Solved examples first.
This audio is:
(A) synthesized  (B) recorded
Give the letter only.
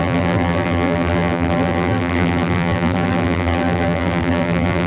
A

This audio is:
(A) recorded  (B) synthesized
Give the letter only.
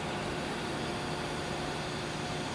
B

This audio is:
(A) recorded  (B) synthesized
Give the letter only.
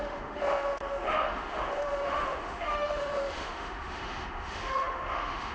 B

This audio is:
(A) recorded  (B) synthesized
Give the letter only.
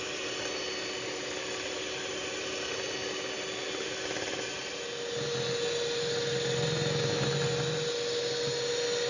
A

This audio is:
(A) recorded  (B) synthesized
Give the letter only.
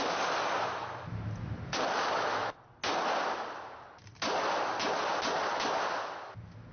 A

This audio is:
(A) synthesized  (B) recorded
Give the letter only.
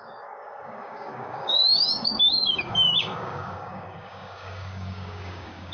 A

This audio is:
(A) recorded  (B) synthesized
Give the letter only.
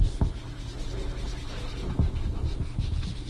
A